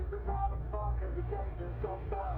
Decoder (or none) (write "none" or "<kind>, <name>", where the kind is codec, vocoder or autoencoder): codec, DAC